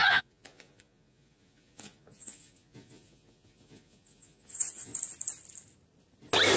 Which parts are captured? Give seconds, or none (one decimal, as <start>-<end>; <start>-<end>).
4.9-6.6